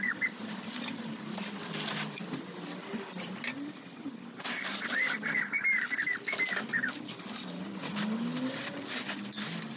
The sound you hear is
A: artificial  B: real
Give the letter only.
B